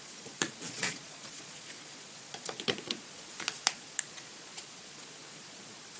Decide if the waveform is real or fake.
fake